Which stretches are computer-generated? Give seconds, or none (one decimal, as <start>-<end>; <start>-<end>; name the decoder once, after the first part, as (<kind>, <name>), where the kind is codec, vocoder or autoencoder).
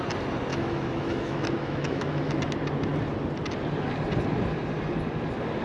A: 0.5-2.3 (autoencoder, DAC-VAE)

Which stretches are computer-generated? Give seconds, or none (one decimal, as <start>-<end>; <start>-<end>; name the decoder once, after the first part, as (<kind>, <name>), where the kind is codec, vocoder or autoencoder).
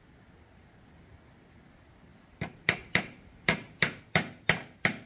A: 2.1-4.0 (vocoder, BigVGAN v2)